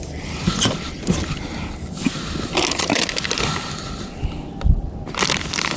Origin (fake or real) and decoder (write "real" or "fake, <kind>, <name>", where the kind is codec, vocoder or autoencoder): real